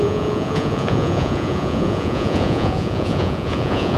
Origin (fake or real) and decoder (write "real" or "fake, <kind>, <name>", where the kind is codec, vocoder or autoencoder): fake, vocoder, Vocos